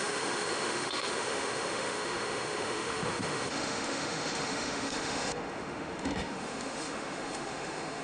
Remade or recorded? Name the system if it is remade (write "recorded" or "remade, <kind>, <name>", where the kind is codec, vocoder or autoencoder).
remade, autoencoder, DAC-VAE